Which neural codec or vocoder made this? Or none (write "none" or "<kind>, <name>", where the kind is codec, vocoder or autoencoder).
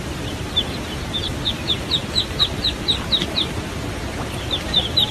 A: none